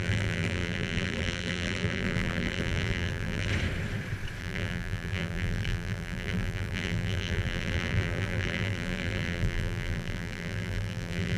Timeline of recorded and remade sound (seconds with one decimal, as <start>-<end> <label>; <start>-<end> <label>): 0.0-3.5 remade; 3.5-4.4 recorded; 4.4-11.4 remade

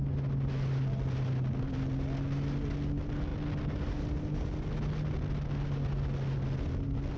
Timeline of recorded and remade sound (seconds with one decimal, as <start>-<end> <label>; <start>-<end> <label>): 0.0-7.2 recorded

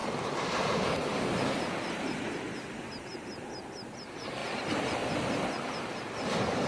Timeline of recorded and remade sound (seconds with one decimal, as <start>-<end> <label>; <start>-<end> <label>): 0.0-1.1 recorded; 1.1-2.3 remade; 2.3-6.7 recorded

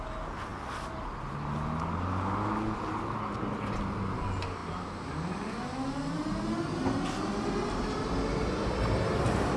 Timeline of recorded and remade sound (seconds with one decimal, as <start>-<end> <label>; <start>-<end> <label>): 0.0-9.6 recorded

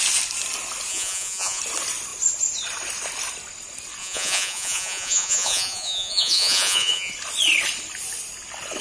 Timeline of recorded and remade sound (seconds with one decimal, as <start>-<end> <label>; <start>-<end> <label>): 0.0-0.9 recorded; 0.9-1.6 remade; 1.6-4.0 recorded; 4.0-7.1 remade; 7.1-8.8 recorded

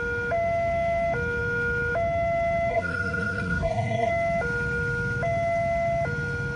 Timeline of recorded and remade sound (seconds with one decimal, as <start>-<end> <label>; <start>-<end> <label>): 0.0-2.7 recorded; 2.7-4.1 remade; 4.1-6.6 recorded

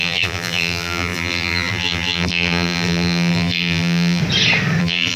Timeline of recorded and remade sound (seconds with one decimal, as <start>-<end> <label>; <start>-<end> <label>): 0.0-4.2 remade; 4.2-4.8 recorded; 4.8-5.2 remade